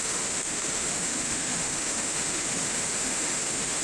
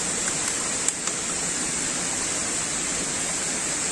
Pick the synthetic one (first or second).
first